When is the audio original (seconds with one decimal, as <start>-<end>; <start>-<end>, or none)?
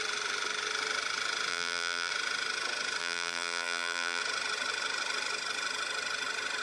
0.0-1.5; 2.1-3.0; 4.2-6.6